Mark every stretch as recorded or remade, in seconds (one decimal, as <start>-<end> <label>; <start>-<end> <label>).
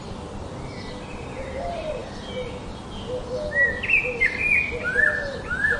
0.0-5.8 recorded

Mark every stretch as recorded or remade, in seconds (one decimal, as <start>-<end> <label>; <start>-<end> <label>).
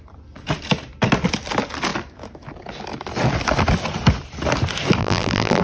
0.0-5.0 recorded; 5.0-5.6 remade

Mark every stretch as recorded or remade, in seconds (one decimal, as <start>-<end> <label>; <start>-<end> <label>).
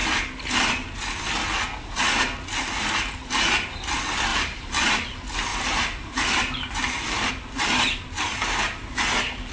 0.0-4.3 recorded; 4.3-4.9 remade; 4.9-5.5 recorded; 5.5-7.3 remade; 7.3-9.5 recorded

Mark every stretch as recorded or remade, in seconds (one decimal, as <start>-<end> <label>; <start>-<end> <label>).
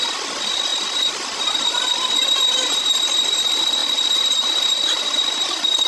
0.0-5.9 recorded